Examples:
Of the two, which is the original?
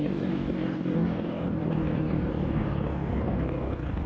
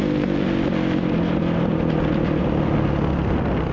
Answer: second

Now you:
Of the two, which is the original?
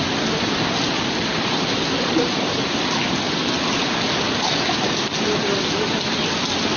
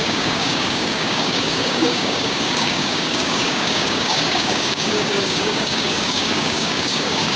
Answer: first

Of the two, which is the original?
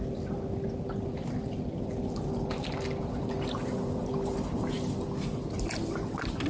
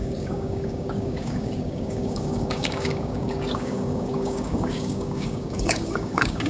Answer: first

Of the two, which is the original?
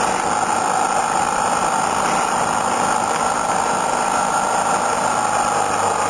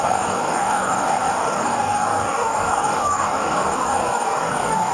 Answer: first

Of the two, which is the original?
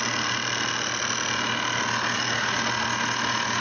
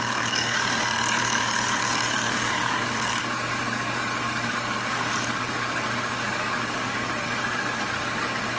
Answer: first